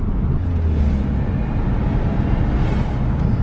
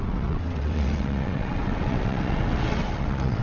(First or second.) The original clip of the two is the first